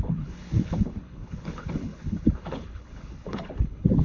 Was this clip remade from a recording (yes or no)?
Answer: yes